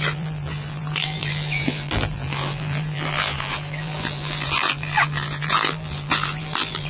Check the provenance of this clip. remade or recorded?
remade